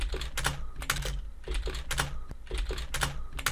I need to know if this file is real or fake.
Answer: real